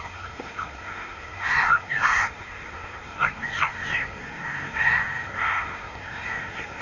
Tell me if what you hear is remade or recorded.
remade